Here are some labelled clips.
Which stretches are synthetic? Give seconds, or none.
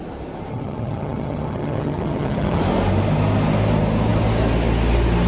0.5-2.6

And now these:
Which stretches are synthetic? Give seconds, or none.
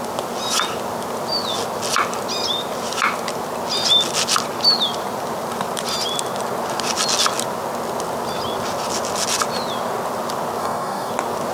10.6-11.1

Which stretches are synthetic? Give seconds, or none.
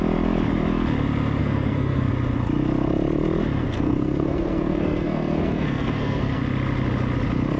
1.4-2.1; 3.6-6.4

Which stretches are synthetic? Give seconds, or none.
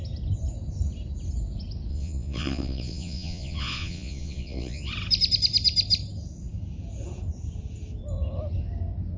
1.9-4.9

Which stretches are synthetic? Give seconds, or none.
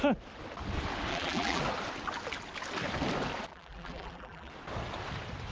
1.1-1.6; 3.5-4.5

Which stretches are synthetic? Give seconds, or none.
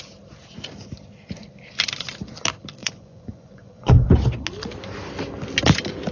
2.8-4.1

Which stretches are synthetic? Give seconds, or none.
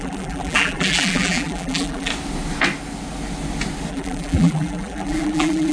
0.0-2.1; 3.9-5.7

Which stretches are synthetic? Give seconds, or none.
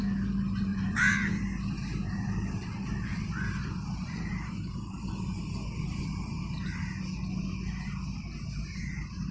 0.7-1.4; 1.9-5.1